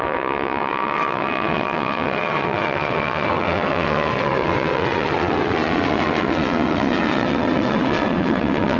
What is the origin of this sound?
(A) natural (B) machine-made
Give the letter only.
B